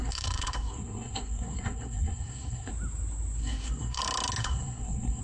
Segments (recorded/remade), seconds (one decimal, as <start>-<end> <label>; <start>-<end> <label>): 0.0-2.7 remade; 2.7-3.4 recorded; 3.4-4.0 remade; 4.0-4.4 recorded; 4.4-5.2 remade

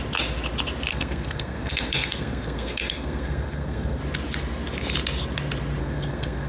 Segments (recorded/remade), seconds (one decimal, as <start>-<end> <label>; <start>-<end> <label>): 0.0-0.9 recorded; 0.9-4.0 remade; 4.0-5.8 recorded; 5.8-6.5 remade